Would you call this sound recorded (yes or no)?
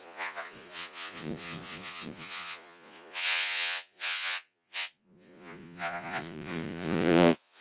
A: no